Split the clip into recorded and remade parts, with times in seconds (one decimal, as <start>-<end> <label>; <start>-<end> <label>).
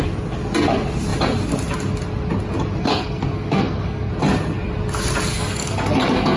0.0-2.8 recorded; 2.8-4.1 remade; 4.1-5.3 recorded; 5.3-6.4 remade